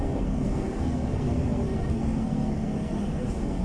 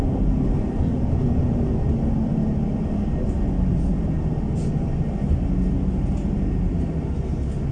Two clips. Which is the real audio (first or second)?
second